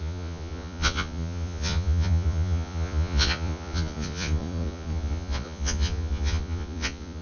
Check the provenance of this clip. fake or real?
fake